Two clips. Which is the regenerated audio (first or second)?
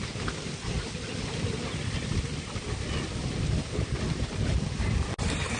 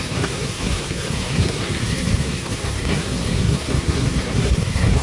second